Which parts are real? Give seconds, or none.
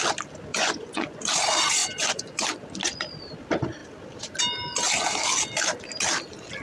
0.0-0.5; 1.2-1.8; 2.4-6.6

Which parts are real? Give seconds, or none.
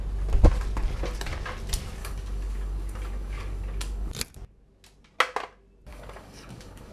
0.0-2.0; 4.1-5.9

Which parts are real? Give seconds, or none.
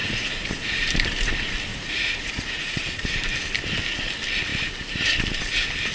0.7-1.7; 3.1-5.9